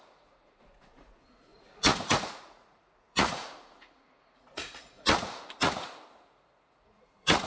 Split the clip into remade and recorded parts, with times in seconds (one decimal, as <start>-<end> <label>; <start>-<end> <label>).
0.0-7.5 remade